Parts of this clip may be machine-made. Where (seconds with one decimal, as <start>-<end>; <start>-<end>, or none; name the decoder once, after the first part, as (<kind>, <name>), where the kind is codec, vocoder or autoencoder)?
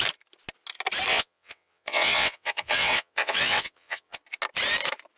1.1-4.2 (vocoder, WaveNeXt)